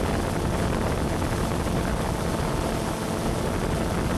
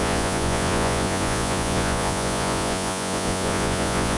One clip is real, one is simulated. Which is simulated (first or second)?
second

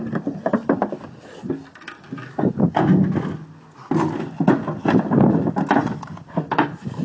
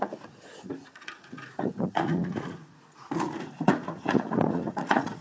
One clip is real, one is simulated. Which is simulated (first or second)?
second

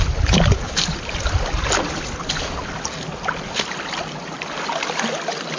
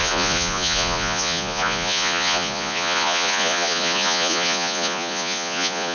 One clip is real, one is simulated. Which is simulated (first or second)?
second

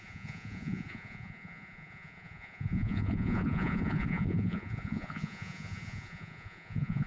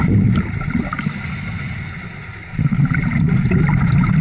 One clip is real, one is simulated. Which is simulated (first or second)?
first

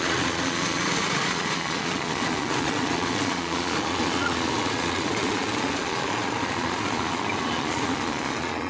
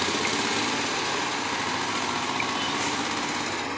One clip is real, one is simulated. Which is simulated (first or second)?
first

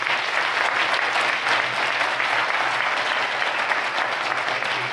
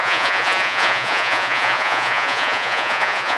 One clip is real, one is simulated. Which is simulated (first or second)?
second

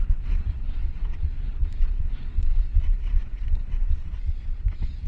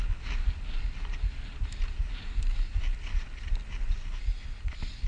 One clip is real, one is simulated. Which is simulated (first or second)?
first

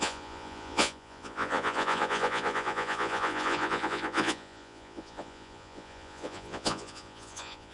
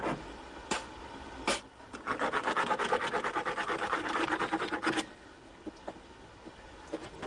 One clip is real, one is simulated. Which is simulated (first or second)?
first